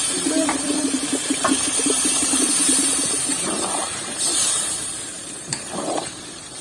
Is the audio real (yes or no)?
no